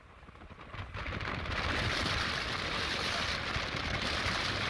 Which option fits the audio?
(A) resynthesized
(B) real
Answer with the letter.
A